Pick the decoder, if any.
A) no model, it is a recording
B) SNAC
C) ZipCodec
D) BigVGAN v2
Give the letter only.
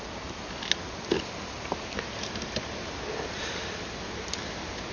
A